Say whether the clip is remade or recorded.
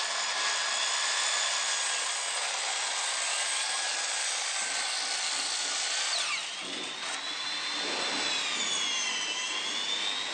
recorded